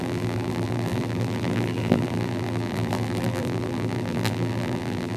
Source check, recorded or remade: remade